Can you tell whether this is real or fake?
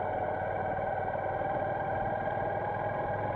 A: real